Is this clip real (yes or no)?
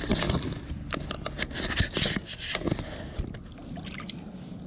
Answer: yes